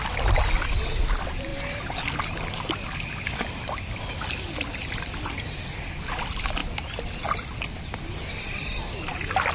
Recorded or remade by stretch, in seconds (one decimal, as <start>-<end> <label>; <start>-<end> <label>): 0.0-9.5 recorded

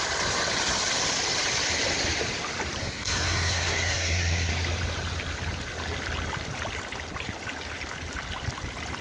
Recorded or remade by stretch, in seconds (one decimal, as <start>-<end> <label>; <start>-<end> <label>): 0.0-2.8 recorded; 2.8-4.5 remade; 4.5-9.0 recorded

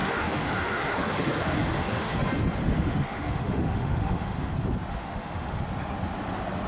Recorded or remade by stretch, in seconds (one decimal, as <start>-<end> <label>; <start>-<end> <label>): 0.0-2.2 remade; 2.2-2.6 recorded; 2.6-4.5 remade; 4.5-4.9 recorded; 4.9-5.6 remade; 5.6-6.7 recorded

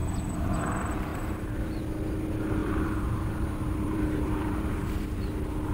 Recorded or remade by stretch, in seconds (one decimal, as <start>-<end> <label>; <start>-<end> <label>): 0.0-0.6 remade; 0.6-1.1 recorded; 1.1-1.8 remade; 1.8-2.6 recorded; 2.6-5.3 remade; 5.3-5.7 recorded